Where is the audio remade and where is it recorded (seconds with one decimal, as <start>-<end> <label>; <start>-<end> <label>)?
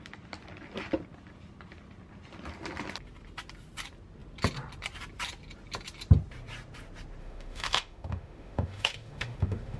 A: 0.0-7.2 recorded; 7.2-9.8 remade